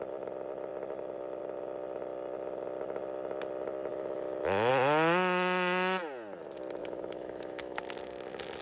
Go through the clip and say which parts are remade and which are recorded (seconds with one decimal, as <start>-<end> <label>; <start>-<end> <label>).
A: 0.0-3.9 recorded; 3.9-4.7 remade; 4.7-6.8 recorded; 6.8-7.8 remade; 7.8-8.6 recorded